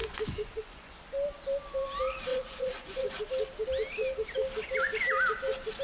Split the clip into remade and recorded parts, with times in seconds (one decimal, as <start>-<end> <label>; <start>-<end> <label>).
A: 0.0-1.0 remade; 1.0-2.3 recorded; 2.3-3.1 remade; 3.1-5.8 recorded